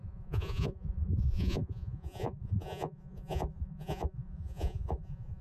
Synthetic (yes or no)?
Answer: yes